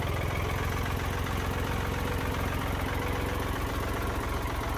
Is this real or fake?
real